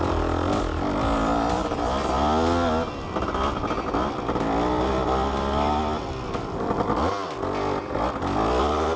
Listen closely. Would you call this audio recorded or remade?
recorded